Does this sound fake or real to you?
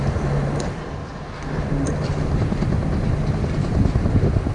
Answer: real